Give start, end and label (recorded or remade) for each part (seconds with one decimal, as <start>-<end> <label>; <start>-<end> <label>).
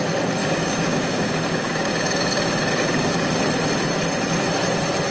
0.0-0.4 recorded; 0.4-3.5 remade; 3.5-5.1 recorded